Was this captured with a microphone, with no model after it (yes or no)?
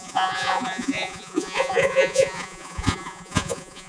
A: no